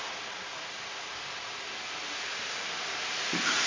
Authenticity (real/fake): real